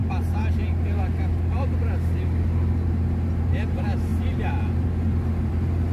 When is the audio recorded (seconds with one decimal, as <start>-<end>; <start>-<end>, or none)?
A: 0.0-5.9